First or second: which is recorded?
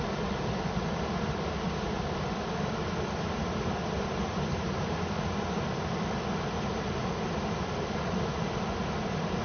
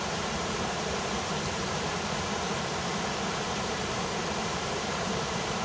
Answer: first